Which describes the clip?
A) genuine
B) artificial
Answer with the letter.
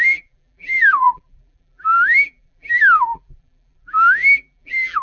B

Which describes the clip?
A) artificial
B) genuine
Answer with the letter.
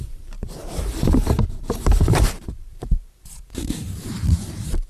A